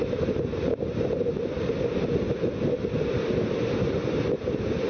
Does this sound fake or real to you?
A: real